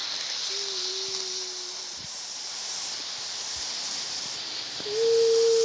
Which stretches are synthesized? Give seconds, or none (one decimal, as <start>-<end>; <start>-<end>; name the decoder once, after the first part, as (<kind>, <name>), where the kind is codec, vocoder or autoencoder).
none